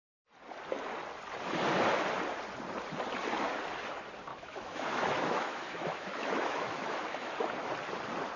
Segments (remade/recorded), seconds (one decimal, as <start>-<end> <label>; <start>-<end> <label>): 0.0-4.3 recorded; 4.3-7.3 remade; 7.3-8.4 recorded